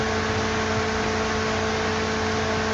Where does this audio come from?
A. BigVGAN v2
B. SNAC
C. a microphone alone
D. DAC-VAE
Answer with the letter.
C